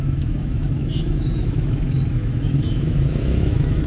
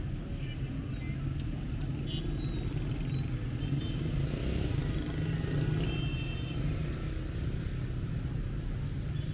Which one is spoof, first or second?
first